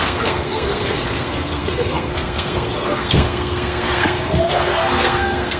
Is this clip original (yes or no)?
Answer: no